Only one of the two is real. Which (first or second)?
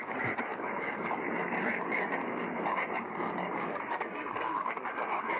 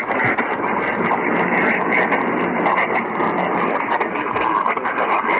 second